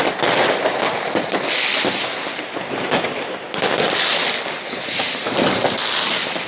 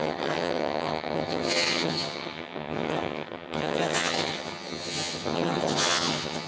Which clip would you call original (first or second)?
first